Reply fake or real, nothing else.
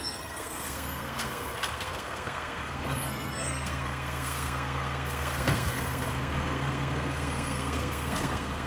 fake